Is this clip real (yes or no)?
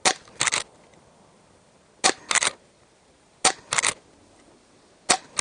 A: yes